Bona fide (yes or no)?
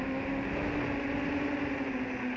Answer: yes